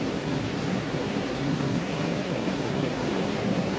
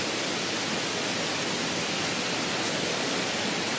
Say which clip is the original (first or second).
second